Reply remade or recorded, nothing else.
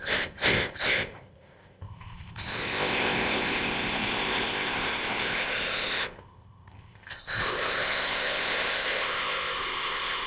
remade